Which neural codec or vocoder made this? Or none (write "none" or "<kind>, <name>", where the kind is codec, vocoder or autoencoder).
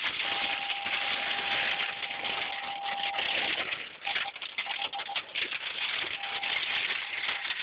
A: none